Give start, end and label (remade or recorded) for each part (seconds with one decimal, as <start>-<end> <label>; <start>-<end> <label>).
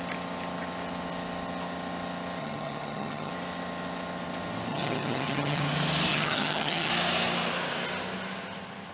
0.0-2.4 recorded; 2.4-3.3 remade; 3.3-4.7 recorded; 4.7-5.6 remade; 5.6-6.1 recorded; 6.1-6.9 remade; 6.9-8.9 recorded